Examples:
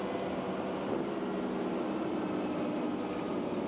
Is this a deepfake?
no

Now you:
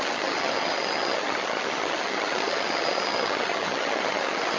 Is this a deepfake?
yes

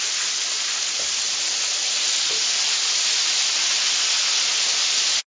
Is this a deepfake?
no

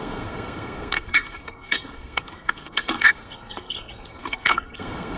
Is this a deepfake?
yes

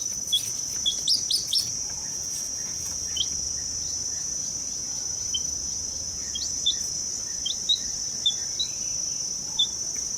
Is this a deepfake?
yes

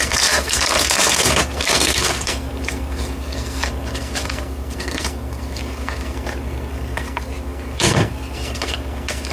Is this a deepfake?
yes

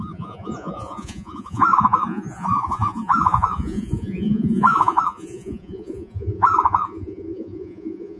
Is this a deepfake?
yes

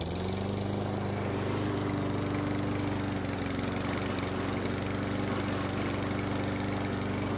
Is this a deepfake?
no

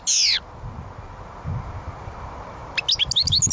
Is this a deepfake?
no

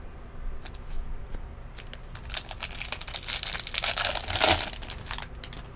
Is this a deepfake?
no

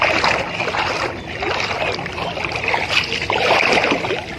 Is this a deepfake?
no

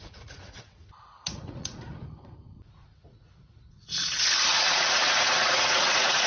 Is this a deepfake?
yes